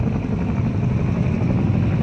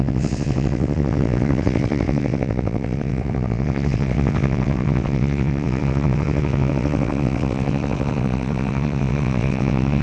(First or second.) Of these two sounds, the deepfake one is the second